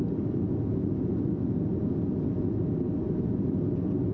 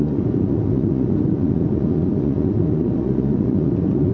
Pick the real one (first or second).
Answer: first